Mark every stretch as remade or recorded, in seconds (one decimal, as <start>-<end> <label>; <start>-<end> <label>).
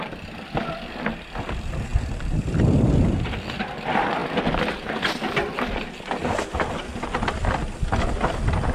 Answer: 0.0-1.9 recorded; 1.9-2.6 remade; 2.6-6.2 recorded; 6.2-6.8 remade; 6.8-8.7 recorded